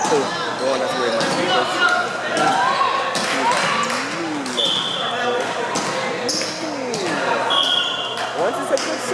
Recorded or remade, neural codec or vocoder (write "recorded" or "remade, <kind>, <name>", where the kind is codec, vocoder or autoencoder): recorded